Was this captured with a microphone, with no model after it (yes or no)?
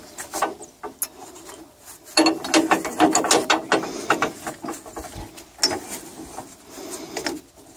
yes